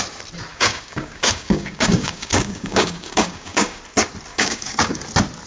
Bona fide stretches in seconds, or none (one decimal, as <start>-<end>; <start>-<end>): 0.0-0.5; 3.8-4.3; 5.0-5.5